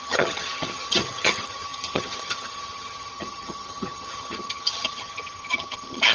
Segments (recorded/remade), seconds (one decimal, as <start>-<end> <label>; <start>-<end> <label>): 0.0-6.1 remade